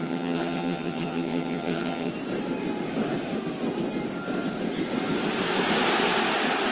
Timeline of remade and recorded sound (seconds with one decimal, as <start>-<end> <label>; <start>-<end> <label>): 0.0-2.1 remade; 2.1-6.7 recorded